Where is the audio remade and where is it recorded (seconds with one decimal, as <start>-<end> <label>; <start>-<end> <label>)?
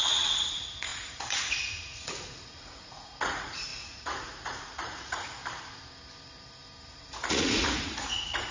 0.0-5.4 remade; 5.4-6.9 recorded; 6.9-8.5 remade